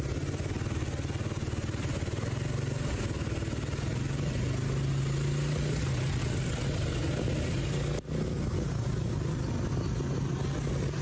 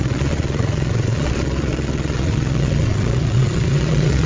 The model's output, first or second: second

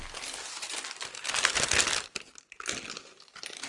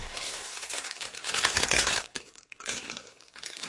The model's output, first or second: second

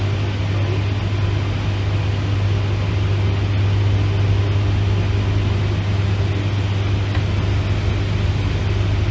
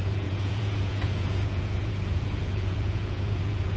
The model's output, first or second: second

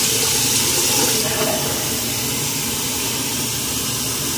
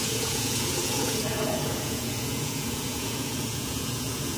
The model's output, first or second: second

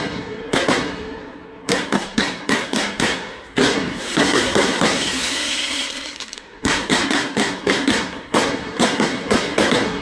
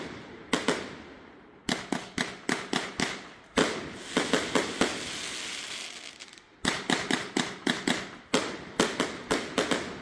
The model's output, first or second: first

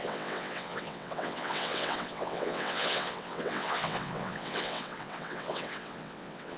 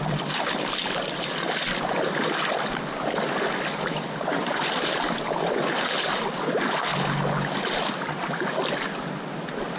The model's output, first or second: first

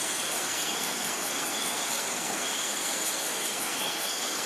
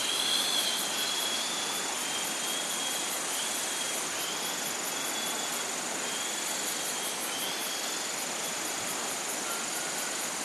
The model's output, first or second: first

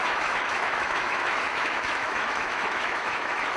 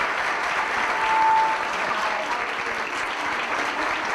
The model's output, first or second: first